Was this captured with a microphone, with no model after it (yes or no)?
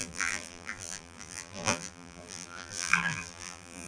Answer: no